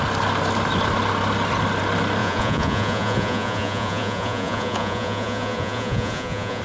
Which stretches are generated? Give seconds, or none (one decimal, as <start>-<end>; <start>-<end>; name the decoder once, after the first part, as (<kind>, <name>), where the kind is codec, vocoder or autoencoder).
2.2-6.6 (vocoder, Vocos)